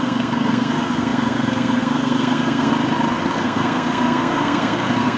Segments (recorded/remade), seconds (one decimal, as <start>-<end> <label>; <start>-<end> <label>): 0.0-2.7 remade; 2.7-3.2 recorded; 3.2-5.2 remade